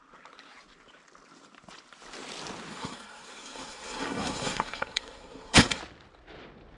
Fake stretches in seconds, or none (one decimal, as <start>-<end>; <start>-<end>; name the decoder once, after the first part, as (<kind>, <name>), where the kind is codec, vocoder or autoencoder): 2.7-5.8 (codec, SNAC)